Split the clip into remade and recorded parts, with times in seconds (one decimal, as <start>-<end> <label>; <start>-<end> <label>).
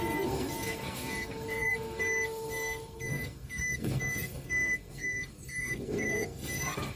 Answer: 0.0-7.0 remade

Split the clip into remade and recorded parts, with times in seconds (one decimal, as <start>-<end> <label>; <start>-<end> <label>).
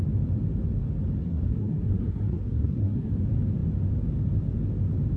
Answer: 0.0-1.2 recorded; 1.2-3.1 remade; 3.1-5.2 recorded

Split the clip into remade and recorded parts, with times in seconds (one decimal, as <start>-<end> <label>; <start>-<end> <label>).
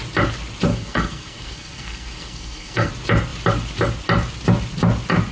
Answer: 0.0-0.7 recorded; 0.7-2.9 remade; 2.9-5.3 recorded